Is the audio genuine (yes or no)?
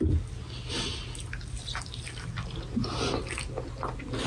yes